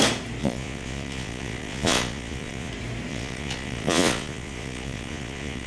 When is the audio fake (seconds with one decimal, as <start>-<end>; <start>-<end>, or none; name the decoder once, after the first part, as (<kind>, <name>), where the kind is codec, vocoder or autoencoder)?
0.4-2.7 (vocoder, Vocos); 3.1-5.7

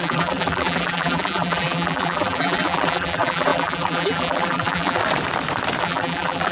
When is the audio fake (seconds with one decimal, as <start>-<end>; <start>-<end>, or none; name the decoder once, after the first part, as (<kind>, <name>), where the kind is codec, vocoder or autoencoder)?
0.0-5.0 (vocoder, BigVGAN v2); 5.8-6.5

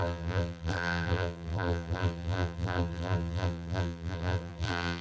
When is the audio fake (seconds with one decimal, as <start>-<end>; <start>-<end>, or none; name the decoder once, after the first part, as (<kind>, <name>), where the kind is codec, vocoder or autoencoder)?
0.0-5.0 (vocoder, BigVGAN v2)

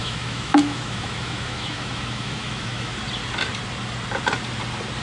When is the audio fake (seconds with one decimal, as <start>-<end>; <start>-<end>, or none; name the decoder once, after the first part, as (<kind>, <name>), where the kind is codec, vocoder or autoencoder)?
0.0-3.0 (autoencoder, DAC-VAE)